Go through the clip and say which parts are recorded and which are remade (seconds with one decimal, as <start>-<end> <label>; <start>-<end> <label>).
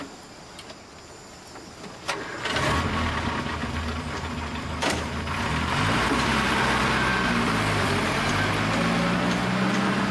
0.0-3.6 recorded; 3.6-8.3 remade; 8.3-10.1 recorded